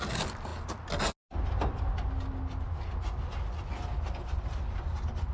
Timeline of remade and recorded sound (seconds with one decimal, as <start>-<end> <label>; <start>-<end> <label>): 0.0-5.3 recorded